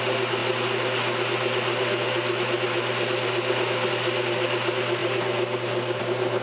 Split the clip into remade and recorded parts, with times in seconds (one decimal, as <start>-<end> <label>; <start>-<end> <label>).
0.0-6.4 recorded